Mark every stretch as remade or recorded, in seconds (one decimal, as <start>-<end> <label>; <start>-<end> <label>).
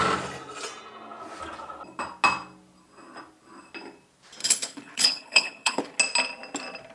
0.0-4.4 recorded; 4.4-6.0 remade; 6.0-6.9 recorded